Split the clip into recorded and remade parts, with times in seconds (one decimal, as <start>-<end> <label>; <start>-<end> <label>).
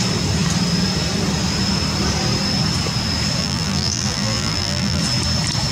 0.0-3.4 recorded; 3.4-5.0 remade; 5.0-5.7 recorded